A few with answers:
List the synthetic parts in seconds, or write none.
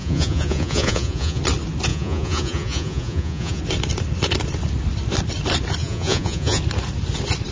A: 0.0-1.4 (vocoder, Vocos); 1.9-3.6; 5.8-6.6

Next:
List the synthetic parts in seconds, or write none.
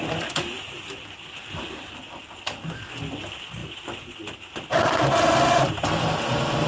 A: none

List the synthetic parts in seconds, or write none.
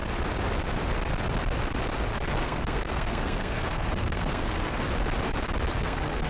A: 2.4-4.8 (codec, SNAC); 5.7-6.3